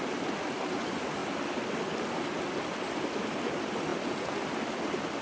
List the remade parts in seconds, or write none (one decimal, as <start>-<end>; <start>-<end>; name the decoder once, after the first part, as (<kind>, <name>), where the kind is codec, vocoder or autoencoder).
none